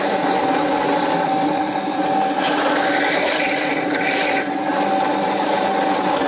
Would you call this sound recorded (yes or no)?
yes